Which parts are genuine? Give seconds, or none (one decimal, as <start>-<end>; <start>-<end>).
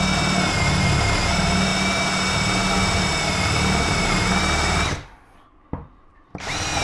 0.0-6.8